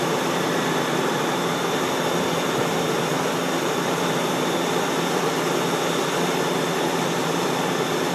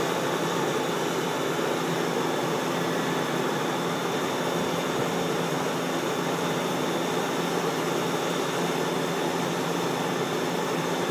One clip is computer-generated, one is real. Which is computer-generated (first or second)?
first